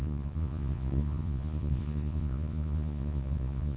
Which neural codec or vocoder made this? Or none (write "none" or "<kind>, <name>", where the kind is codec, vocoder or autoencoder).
vocoder, Vocos